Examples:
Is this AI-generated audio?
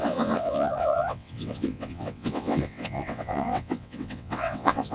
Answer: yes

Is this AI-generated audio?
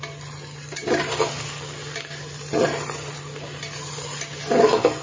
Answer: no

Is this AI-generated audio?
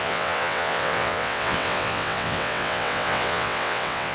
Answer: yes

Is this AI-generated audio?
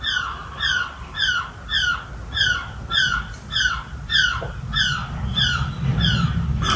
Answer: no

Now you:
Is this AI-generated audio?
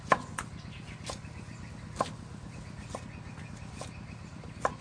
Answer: no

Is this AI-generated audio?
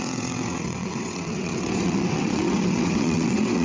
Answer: yes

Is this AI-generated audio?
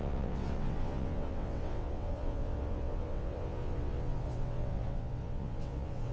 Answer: yes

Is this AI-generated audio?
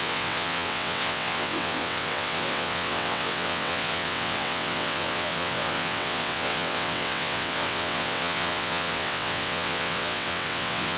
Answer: yes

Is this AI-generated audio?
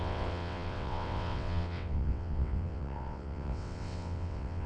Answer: yes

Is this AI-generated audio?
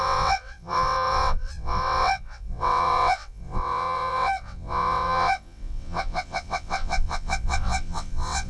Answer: yes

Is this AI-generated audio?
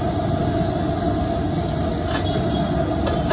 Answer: no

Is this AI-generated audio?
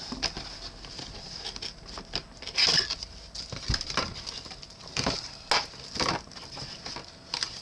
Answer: no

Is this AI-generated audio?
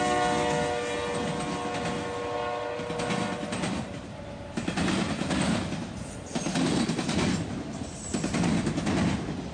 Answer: no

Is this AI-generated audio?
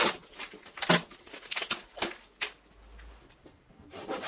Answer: no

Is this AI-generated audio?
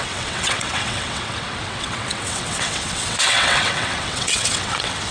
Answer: yes